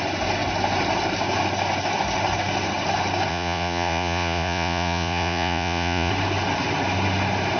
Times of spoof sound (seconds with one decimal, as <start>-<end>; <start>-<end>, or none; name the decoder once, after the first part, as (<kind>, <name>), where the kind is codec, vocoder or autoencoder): 3.3-6.1 (vocoder, Vocos)